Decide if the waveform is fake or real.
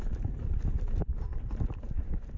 real